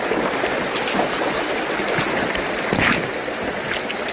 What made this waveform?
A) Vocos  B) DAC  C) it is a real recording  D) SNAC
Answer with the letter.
C